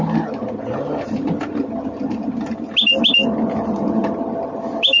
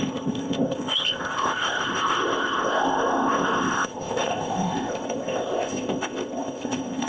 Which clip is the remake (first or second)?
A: second